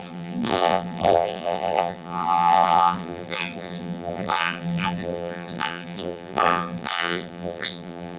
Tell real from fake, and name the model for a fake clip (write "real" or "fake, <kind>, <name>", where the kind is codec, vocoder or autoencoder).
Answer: fake, vocoder, BigVGAN v2